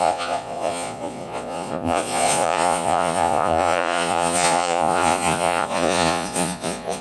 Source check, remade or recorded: remade